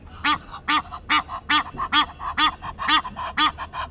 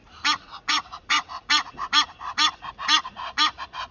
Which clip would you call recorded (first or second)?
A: first